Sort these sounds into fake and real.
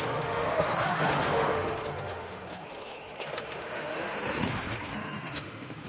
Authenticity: fake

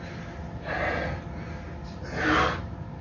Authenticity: real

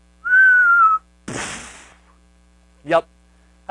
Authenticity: real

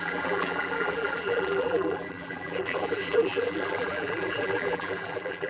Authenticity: fake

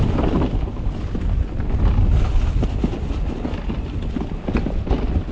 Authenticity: real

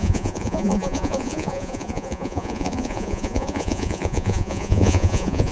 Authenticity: fake